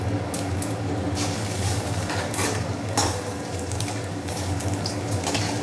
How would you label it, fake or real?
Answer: fake